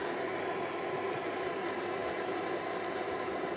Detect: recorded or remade recorded